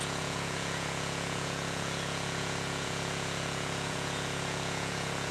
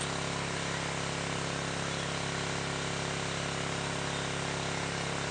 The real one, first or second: second